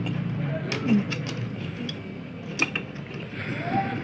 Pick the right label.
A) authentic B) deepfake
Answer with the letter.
A